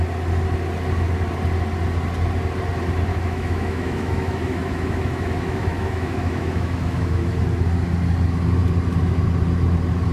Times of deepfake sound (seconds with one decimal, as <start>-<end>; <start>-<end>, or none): 3.1-7.4